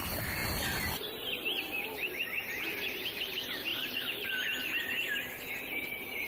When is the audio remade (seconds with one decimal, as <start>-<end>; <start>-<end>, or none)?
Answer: 3.7-4.3